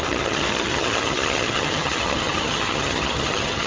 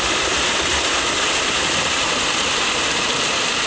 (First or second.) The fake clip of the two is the first